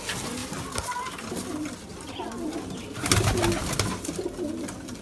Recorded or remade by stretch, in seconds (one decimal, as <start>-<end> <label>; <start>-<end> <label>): 0.0-5.0 recorded